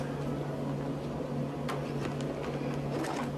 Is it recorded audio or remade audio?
recorded